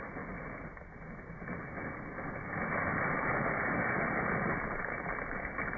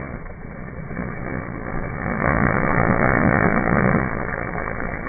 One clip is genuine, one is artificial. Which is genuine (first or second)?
first